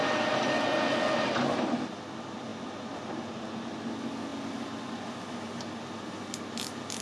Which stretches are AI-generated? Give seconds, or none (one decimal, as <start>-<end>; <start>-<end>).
none